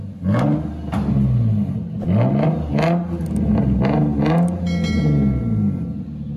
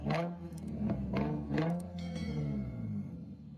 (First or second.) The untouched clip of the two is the first